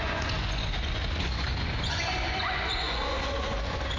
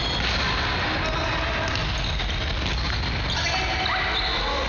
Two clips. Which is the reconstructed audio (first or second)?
first